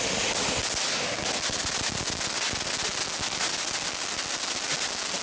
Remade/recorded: recorded